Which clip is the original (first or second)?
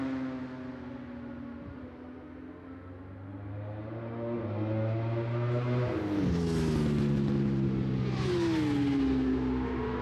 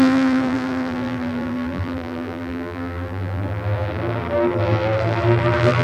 first